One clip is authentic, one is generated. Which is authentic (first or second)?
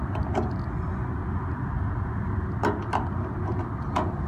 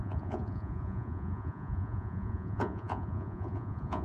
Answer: first